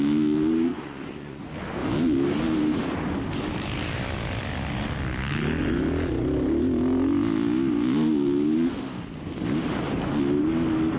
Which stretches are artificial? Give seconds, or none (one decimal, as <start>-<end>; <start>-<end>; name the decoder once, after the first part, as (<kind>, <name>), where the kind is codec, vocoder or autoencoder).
0.7-1.4 (vocoder, Vocos)